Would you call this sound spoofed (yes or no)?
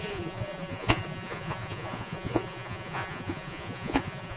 yes